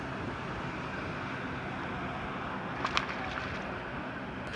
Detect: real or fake real